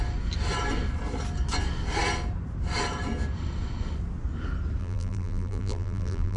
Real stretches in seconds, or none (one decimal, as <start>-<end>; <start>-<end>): 0.0-4.8